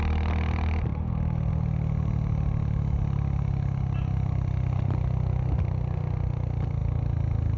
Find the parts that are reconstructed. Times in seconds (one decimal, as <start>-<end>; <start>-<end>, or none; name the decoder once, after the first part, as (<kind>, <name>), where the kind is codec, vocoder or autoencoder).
none